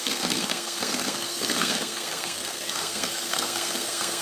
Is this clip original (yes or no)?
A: no